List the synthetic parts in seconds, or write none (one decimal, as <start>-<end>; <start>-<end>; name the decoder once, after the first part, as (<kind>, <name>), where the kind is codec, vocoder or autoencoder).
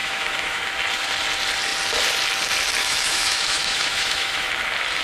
0.0-0.6 (autoencoder, DAC-VAE); 2.8-4.5